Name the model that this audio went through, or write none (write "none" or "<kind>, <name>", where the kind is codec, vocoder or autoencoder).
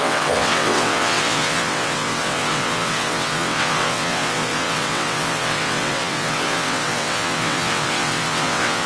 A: vocoder, WaveNeXt